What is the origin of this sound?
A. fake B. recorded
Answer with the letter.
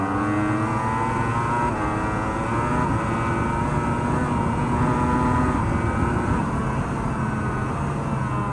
B